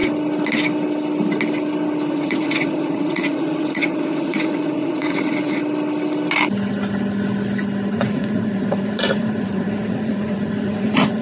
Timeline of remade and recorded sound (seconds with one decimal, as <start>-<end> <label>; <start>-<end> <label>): 0.0-2.1 recorded; 2.1-5.6 remade; 5.6-7.9 recorded; 7.9-11.2 remade